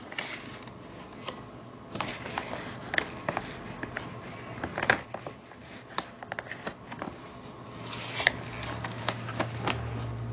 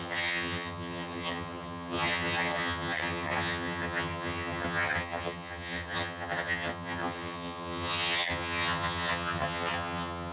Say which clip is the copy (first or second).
second